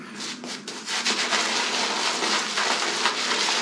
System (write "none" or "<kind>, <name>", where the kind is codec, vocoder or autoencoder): none